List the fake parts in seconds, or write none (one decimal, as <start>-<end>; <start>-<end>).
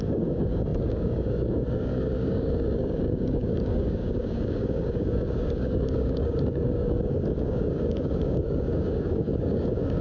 0.0-10.0